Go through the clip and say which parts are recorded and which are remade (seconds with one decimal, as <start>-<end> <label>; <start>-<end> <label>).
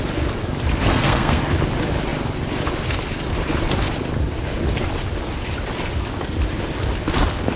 0.0-0.9 recorded; 0.9-1.4 remade; 1.4-7.6 recorded